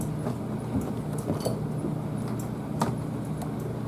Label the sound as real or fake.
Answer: real